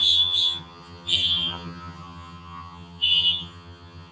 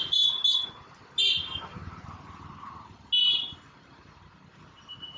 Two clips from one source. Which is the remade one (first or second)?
first